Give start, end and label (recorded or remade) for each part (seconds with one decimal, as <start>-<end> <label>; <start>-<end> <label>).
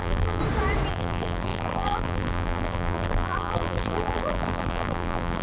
0.0-0.4 remade; 0.4-0.9 recorded; 0.9-5.4 remade